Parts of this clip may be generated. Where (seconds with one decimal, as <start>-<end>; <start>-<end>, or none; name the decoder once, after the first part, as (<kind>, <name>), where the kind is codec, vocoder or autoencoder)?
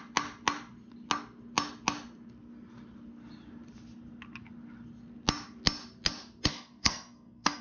6.5-7.6 (codec, SNAC)